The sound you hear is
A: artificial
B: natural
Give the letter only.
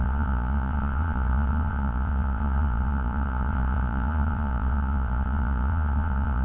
A